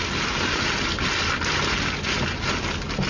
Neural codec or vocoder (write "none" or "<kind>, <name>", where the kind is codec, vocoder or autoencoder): none